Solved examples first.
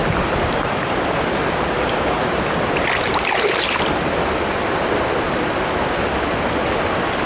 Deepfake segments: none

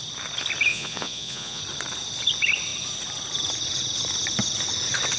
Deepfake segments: 0.7-1.6 (vocoder, Vocos)

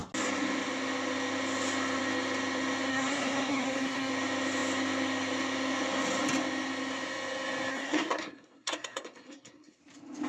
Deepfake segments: 2.9-4.1 (codec, SNAC); 7.7-9.8

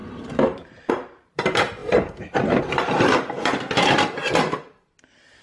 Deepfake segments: 0.0-3.5 (vocoder, BigVGAN v2); 5.0-5.4

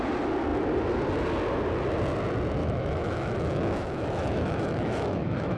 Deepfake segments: 2.6-5.6 (autoencoder, DAC-VAE)